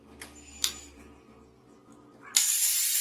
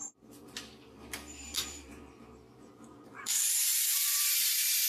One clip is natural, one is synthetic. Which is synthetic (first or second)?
second